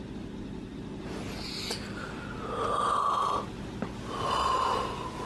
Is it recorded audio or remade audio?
recorded